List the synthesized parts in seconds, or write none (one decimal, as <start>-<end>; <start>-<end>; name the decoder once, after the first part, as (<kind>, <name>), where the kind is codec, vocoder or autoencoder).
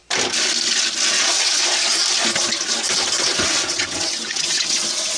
1.2-1.6 (vocoder, WaveNeXt); 3.2-5.2